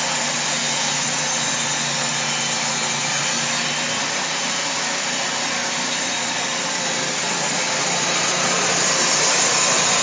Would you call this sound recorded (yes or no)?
yes